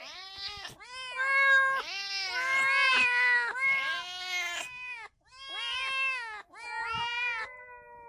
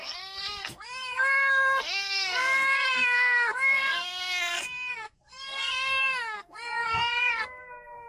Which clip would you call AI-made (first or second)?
second